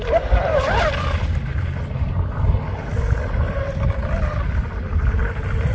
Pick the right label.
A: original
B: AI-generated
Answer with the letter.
A